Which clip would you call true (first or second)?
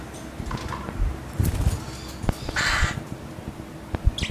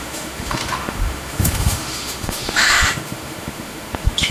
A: first